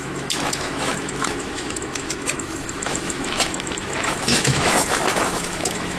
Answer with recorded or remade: remade